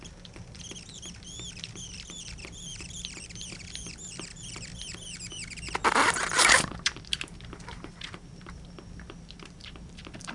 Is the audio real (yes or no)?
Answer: no